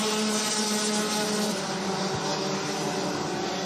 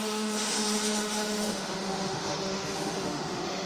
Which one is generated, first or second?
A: second